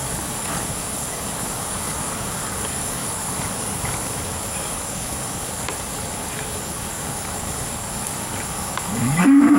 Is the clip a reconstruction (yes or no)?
yes